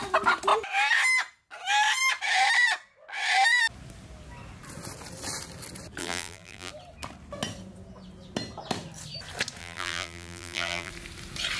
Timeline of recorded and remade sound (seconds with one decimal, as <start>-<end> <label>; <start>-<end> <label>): 0.0-6.0 recorded; 6.0-6.7 remade; 6.7-9.6 recorded; 9.6-10.9 remade; 10.9-11.6 recorded